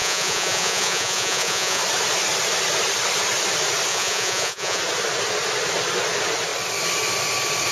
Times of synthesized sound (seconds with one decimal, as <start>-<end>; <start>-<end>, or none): 0.0-1.8; 3.9-4.8